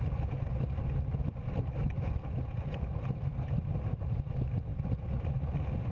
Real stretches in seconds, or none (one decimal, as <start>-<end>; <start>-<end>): 0.0-5.9

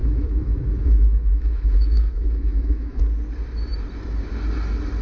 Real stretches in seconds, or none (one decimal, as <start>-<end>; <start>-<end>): 3.0-5.0

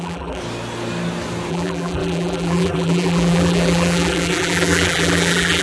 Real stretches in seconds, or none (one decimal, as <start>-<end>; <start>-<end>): 0.4-1.5

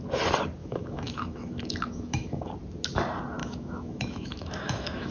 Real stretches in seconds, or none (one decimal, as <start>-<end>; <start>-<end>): 0.0-0.6; 2.5-3.4

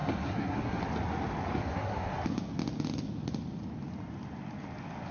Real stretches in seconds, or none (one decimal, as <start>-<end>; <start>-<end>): 0.8-1.6; 2.1-5.1

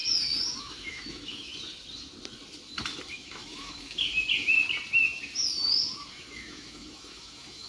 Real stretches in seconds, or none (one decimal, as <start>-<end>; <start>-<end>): 0.0-0.6; 1.5-3.1; 4.1-6.1

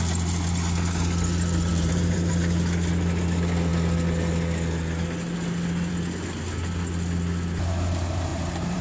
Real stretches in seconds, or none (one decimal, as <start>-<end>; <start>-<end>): 0.0-1.7; 2.3-8.3